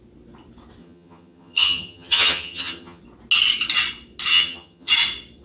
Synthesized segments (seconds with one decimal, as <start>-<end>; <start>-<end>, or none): 0.8-3.0; 4.3-4.9

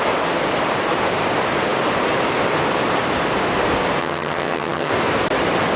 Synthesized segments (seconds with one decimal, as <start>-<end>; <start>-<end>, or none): 4.0-4.9